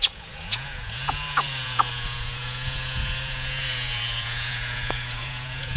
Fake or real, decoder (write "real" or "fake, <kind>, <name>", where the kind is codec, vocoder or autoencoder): fake, vocoder, Vocos